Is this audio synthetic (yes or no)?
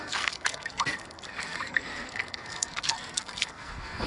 yes